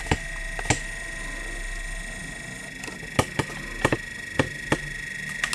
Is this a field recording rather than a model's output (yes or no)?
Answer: yes